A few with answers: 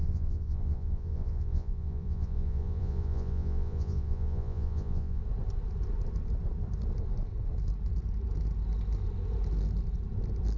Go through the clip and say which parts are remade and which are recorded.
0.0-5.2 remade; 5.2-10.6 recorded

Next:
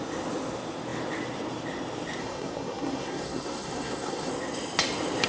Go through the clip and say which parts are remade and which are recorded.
0.0-2.2 recorded; 2.2-4.3 remade; 4.3-5.3 recorded

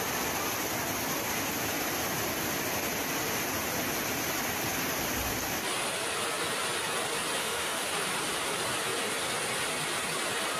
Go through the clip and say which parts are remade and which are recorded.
0.0-7.4 recorded; 7.4-7.9 remade; 7.9-10.6 recorded

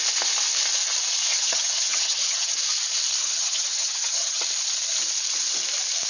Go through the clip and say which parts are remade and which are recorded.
0.0-1.3 recorded; 1.3-2.5 remade; 2.5-3.2 recorded; 3.2-4.4 remade; 4.4-6.1 recorded

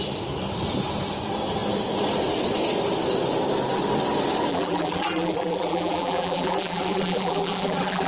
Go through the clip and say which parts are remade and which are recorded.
0.0-4.5 recorded; 4.5-8.1 remade

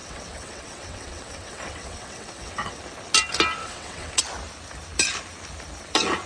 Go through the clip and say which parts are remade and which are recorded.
0.0-2.8 remade; 2.8-3.6 recorded; 3.6-4.2 remade; 4.2-6.3 recorded

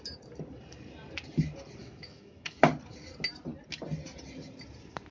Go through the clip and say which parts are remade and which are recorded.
0.0-1.8 recorded; 1.8-2.6 remade; 2.6-5.1 recorded